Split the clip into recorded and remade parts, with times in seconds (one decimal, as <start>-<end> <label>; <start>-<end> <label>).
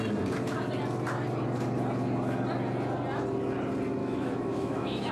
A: 0.0-4.0 recorded; 4.0-5.1 remade